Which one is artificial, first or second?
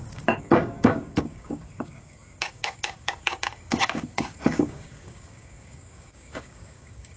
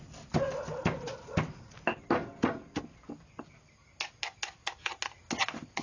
first